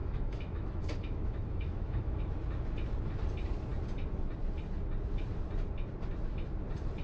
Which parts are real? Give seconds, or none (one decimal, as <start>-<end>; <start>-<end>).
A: 2.2-7.0